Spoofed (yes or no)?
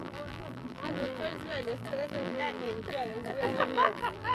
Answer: yes